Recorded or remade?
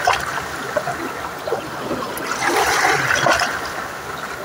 recorded